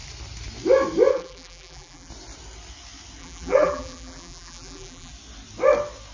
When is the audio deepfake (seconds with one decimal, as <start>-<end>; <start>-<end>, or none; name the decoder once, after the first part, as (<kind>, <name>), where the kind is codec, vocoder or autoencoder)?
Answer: 1.1-2.1 (vocoder, BigVGAN v2); 3.2-5.1